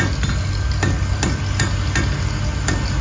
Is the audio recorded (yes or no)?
yes